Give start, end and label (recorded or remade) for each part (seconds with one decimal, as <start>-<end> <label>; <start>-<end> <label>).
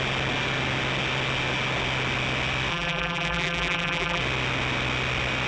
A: 0.0-2.7 recorded; 2.7-4.2 remade; 4.2-5.5 recorded